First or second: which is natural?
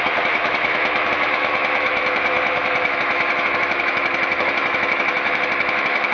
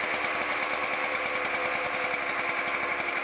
second